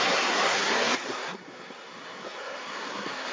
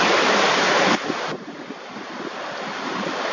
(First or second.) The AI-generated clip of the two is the first